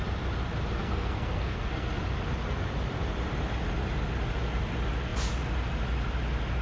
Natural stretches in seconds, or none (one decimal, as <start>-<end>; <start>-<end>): 0.0-0.8; 2.0-6.6